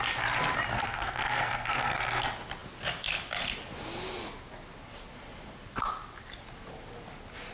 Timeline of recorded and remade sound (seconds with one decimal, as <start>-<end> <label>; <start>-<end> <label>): 0.0-0.7 recorded; 0.7-2.0 remade; 2.0-7.5 recorded